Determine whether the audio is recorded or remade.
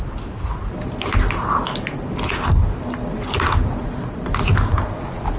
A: recorded